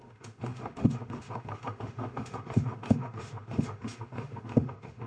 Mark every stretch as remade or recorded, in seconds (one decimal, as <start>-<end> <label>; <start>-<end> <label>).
0.0-5.1 remade